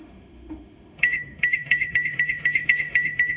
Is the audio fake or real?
fake